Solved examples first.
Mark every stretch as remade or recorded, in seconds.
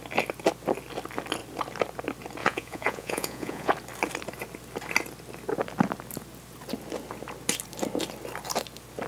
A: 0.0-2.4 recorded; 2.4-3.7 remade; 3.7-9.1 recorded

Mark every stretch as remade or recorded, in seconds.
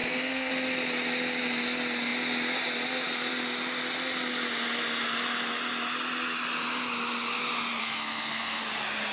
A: 0.0-0.5 remade; 0.5-7.8 recorded; 7.8-8.6 remade; 8.6-9.1 recorded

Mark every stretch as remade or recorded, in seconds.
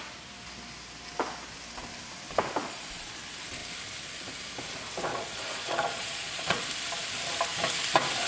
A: 0.0-2.6 recorded; 2.6-3.1 remade; 3.1-5.1 recorded; 5.1-6.6 remade; 6.6-8.3 recorded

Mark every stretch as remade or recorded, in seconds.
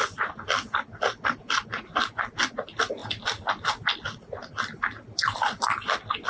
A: 0.0-6.3 recorded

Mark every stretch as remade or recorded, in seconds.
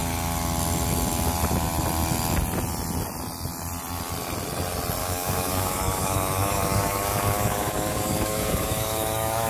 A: 0.0-5.0 recorded; 5.0-9.5 remade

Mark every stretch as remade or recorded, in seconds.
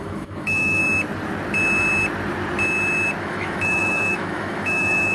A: 0.0-0.8 remade; 0.8-3.2 recorded; 3.2-5.1 remade